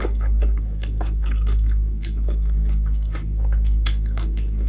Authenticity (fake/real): fake